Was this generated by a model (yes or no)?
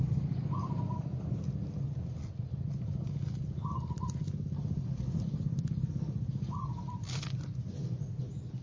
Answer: no